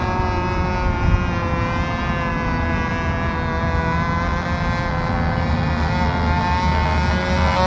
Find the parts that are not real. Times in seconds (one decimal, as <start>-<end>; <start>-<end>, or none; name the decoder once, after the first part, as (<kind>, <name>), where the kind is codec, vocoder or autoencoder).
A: none